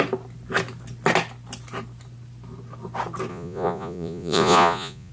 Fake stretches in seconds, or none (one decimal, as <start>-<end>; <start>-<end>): 3.3-5.1